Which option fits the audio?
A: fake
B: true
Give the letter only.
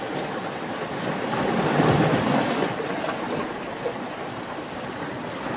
B